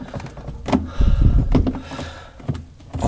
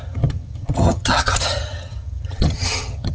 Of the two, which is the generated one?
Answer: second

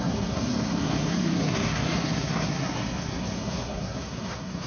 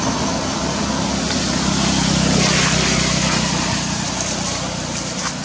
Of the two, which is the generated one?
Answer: first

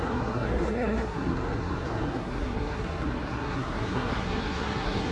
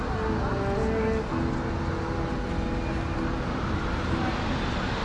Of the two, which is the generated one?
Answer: first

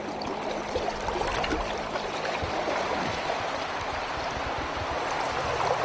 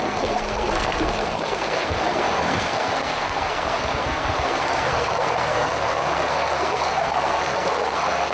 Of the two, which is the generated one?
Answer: second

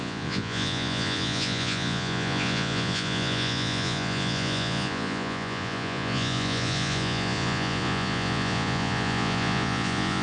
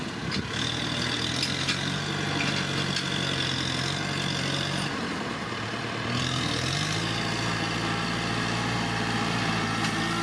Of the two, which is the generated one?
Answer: first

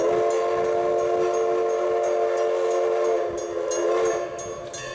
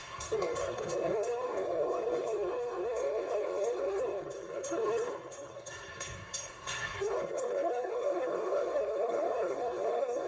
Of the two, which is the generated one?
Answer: second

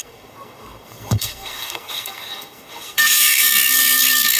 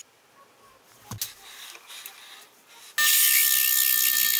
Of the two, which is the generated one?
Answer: first